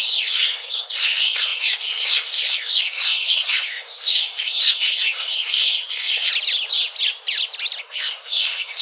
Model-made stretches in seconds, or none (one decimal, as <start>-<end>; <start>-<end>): 0.0-6.3; 7.8-8.8